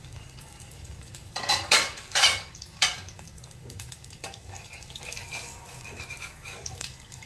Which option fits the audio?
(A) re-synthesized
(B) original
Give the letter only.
A